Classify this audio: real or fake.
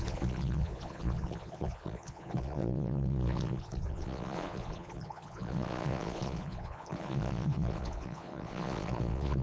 fake